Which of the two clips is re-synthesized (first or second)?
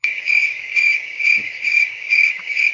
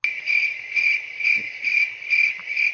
first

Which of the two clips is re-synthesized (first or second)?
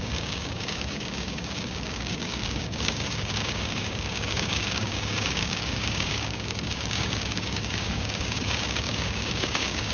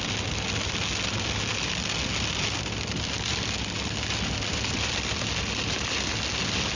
first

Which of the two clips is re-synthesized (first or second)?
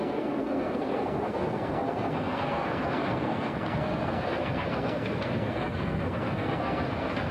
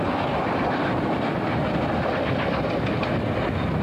first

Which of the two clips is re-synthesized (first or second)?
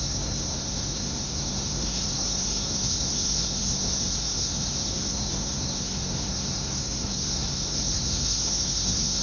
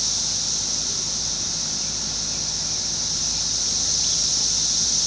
first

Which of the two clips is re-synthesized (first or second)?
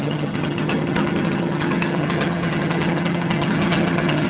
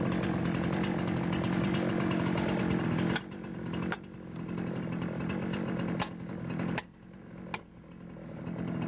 first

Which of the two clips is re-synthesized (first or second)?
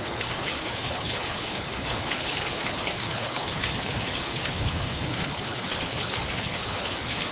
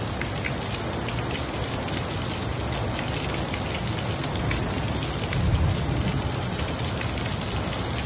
first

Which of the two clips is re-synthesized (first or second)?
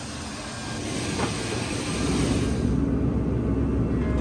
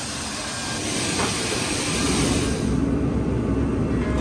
second